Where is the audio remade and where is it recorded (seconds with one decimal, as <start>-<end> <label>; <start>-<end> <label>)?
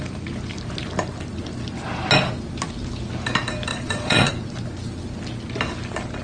0.0-3.7 recorded; 3.7-4.3 remade; 4.3-6.2 recorded